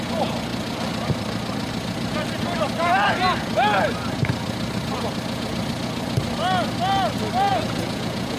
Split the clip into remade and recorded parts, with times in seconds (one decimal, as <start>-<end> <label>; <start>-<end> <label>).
0.0-7.5 recorded; 7.5-8.4 remade